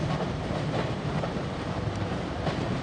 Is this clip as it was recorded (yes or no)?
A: no